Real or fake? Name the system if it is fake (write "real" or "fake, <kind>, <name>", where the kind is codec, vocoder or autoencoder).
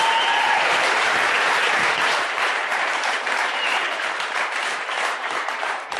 fake, vocoder, BigVGAN v2